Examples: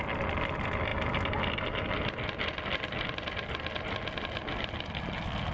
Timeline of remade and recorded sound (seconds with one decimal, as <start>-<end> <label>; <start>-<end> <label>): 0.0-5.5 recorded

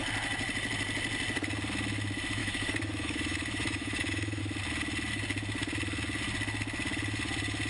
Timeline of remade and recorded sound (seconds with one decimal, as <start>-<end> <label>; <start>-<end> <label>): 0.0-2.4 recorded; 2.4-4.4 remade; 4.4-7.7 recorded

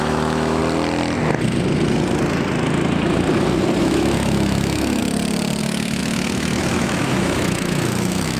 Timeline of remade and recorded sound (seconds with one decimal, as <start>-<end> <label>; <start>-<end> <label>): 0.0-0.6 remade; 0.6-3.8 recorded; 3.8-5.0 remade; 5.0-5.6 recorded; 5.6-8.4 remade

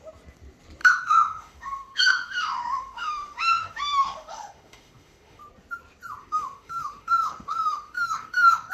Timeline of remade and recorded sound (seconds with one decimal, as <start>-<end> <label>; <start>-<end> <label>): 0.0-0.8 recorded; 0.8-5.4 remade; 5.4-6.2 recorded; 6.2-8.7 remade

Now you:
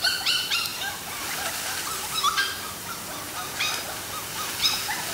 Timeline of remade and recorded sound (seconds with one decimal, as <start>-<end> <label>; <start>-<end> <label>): 0.0-5.1 recorded